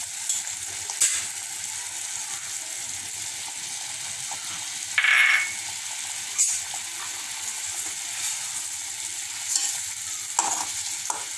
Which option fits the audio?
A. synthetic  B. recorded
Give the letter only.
B